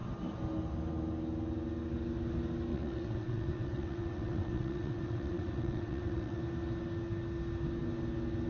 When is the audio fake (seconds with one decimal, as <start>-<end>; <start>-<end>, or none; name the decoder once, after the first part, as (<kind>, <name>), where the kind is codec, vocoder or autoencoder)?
2.7-6.4 (vocoder, WaveNeXt)